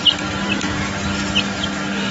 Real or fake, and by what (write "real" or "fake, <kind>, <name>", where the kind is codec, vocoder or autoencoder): real